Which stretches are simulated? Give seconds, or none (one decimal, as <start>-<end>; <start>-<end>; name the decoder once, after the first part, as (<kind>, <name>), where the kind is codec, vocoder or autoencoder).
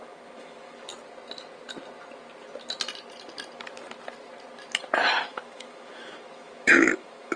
0.0-0.9 (autoencoder, DAC-VAE); 5.3-7.4